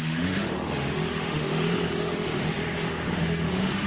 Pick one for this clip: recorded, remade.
remade